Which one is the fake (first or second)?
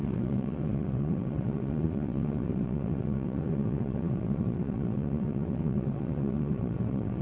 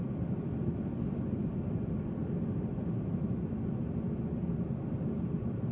first